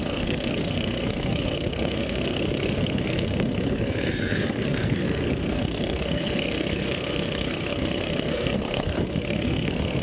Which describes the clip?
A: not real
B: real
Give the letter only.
A